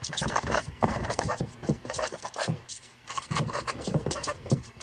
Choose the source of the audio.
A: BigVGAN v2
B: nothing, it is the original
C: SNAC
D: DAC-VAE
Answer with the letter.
C